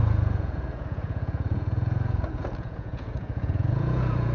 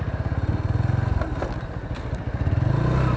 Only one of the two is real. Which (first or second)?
second